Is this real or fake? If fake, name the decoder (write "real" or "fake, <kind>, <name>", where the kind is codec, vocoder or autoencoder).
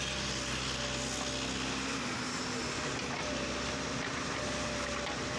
real